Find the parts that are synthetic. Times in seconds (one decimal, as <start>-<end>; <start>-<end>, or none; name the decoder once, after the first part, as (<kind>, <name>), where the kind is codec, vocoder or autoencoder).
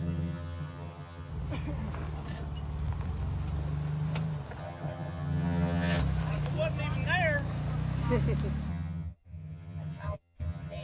0.0-1.3 (vocoder, HiFi-GAN); 4.6-6.0; 8.7-10.8